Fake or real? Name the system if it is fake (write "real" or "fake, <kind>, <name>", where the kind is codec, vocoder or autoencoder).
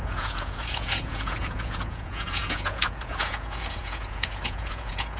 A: fake, vocoder, Vocos